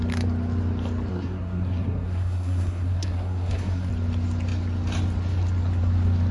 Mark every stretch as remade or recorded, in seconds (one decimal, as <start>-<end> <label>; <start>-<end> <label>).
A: 0.0-1.1 recorded; 1.1-3.9 remade; 3.9-6.3 recorded